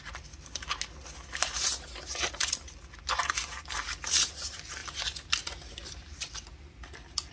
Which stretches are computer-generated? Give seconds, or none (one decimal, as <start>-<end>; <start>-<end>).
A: none